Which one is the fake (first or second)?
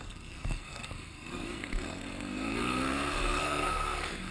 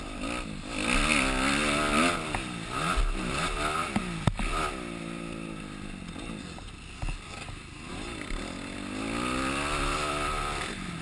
first